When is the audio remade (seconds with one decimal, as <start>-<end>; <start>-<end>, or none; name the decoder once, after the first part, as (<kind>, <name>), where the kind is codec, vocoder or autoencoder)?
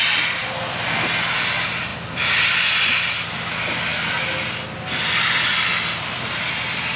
none